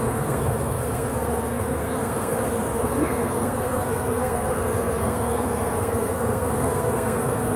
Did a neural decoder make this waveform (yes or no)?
yes